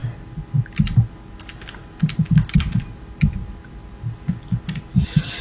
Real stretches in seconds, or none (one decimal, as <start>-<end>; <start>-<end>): 0.0-5.4